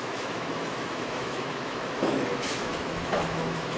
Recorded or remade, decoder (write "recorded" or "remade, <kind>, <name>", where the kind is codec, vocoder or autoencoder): remade, autoencoder, DAC-VAE